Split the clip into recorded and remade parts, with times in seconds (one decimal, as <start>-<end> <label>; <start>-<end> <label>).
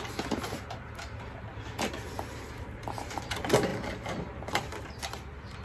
0.0-3.7 recorded; 3.7-4.6 remade; 4.6-5.6 recorded